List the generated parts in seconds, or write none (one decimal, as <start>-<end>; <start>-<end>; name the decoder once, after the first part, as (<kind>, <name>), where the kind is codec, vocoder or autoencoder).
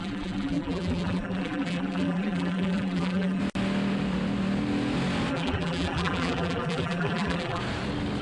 0.0-3.4 (vocoder, BigVGAN v2); 5.3-7.6